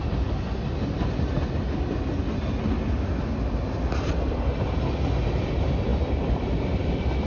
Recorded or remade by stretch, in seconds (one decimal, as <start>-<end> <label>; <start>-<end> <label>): 0.0-7.3 recorded